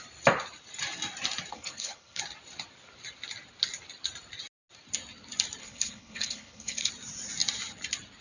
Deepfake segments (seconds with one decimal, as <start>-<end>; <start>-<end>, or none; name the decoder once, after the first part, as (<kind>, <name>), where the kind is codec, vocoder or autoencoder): 1.5-2.2 (codec, HILCodec); 5.6-6.9

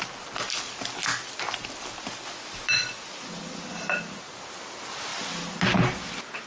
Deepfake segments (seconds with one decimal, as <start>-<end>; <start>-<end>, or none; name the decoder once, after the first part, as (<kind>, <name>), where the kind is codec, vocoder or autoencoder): none

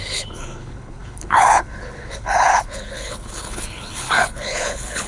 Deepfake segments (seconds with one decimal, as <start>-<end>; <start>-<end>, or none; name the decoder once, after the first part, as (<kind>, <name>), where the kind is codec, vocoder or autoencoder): 0.0-5.1 (codec, HILCodec)

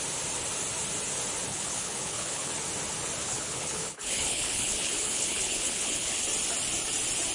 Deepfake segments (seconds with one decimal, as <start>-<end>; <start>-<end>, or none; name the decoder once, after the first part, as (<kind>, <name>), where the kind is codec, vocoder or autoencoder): 1.5-2.5 (codec, HILCodec); 3.2-6.2

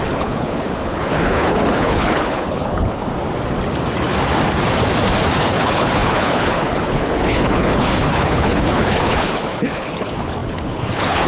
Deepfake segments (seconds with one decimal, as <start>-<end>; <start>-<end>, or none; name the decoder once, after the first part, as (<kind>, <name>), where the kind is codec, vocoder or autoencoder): 0.0-3.0 (codec, HILCodec); 5.4-11.3

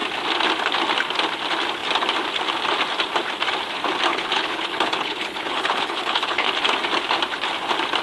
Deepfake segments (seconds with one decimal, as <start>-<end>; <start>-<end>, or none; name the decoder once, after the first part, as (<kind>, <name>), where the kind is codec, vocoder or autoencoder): 4.1-6.5 (codec, HILCodec)